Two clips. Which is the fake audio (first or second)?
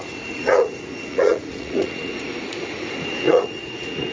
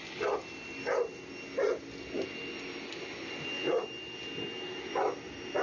first